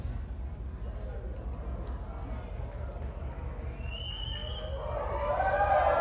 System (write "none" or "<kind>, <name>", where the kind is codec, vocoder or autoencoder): none